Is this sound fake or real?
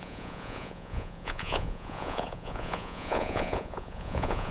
fake